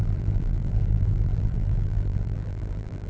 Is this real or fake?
fake